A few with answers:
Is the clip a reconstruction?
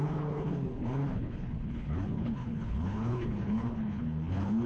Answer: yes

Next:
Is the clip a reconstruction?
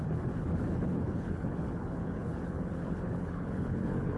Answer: yes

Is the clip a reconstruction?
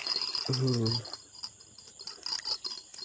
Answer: no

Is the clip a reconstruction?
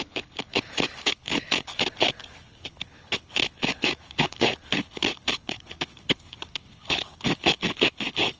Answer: yes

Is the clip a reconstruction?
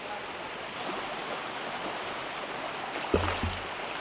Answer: no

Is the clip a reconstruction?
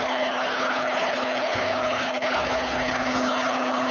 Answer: yes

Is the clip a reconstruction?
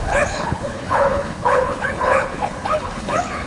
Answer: yes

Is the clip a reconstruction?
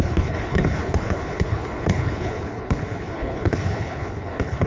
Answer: yes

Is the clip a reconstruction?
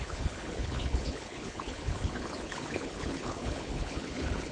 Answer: yes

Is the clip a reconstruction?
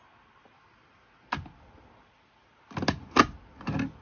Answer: no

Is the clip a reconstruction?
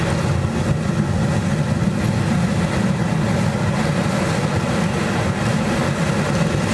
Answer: no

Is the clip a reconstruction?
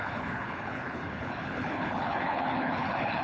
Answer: yes